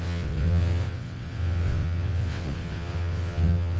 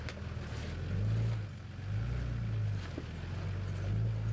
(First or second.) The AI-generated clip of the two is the first